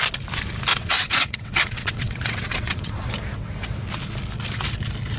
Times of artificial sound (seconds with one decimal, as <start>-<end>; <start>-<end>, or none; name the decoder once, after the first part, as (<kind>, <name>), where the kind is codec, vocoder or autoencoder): 0.7-3.1 (vocoder, WaveNeXt)